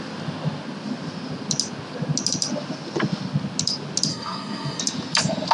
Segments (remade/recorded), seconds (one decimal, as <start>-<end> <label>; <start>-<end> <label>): 0.0-4.1 recorded; 4.1-4.8 remade; 4.8-5.5 recorded